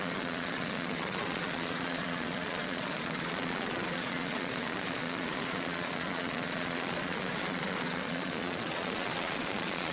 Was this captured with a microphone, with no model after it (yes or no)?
no